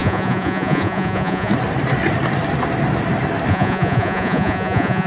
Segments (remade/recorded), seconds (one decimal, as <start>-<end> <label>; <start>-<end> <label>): 0.0-1.5 remade; 1.5-3.5 recorded; 3.5-5.1 remade